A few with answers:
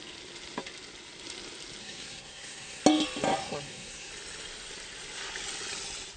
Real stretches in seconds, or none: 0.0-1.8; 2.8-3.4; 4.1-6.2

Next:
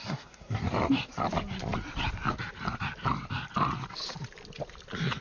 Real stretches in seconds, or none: 0.7-5.2

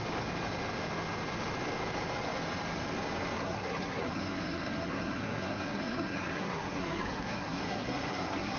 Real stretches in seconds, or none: 0.0-3.4

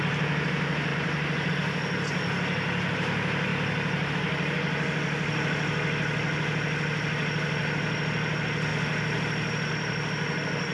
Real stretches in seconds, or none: 0.0-10.7

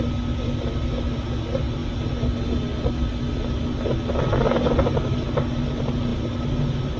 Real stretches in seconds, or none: 0.0-7.0

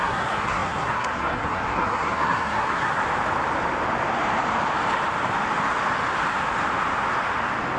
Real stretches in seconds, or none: 3.0-7.8

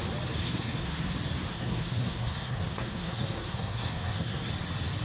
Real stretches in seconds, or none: 0.0-0.4; 1.1-1.5; 4.5-5.0